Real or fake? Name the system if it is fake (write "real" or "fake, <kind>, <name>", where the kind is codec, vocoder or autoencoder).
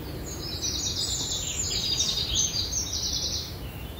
fake, vocoder, BigVGAN v2